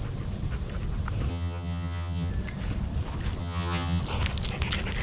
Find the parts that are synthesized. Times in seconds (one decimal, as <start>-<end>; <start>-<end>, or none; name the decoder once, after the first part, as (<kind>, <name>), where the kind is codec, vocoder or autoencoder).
1.3-2.3 (vocoder, HiFi-GAN); 3.4-4.0